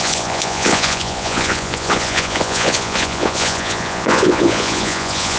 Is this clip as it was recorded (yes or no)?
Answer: no